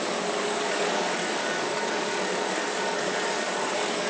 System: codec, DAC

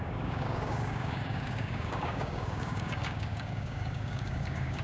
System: codec, DAC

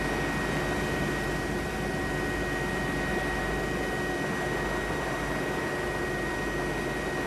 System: none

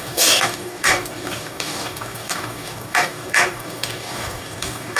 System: codec, DAC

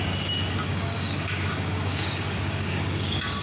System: codec, DAC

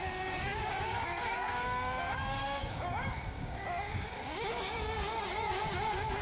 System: codec, DAC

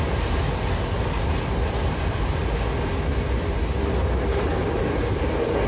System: none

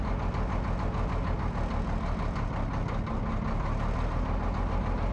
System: none